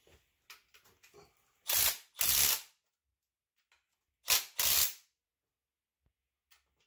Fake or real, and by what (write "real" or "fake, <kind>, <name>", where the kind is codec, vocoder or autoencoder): real